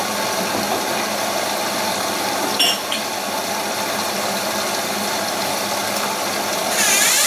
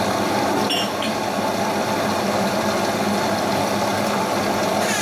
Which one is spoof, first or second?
first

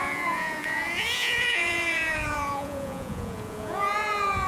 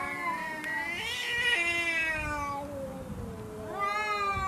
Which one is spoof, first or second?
first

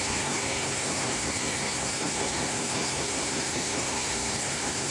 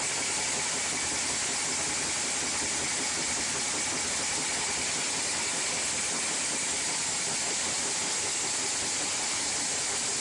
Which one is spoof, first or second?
first